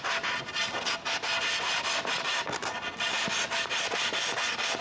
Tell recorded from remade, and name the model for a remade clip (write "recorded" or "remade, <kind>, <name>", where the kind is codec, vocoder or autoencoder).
recorded